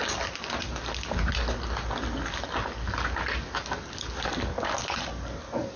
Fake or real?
real